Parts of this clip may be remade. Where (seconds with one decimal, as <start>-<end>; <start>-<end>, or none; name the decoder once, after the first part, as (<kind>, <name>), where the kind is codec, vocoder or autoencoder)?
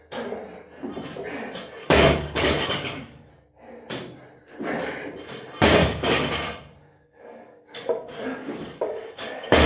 1.8-3.3 (codec, DAC); 5.8-6.3; 6.8-9.7